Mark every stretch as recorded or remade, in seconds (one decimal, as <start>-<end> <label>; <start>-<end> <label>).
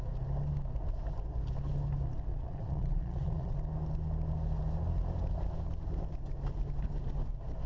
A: 0.0-2.3 recorded; 2.3-3.6 remade; 3.6-7.7 recorded